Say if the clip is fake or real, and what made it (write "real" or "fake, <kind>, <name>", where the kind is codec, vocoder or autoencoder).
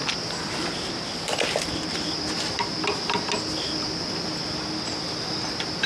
real